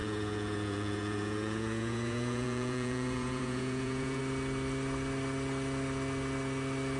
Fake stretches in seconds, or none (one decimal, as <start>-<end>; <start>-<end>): 0.0-4.2